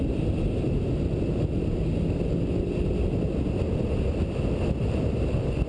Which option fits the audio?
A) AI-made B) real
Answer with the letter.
B